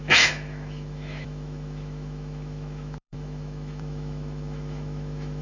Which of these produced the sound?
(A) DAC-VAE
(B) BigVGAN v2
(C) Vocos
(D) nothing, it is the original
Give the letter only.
A